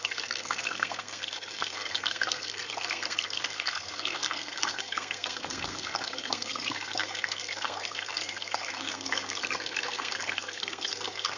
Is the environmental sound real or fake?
fake